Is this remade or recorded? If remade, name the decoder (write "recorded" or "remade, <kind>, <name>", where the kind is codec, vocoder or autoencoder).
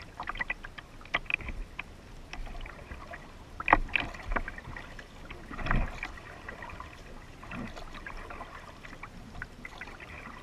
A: recorded